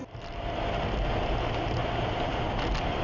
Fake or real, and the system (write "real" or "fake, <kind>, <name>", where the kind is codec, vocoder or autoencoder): real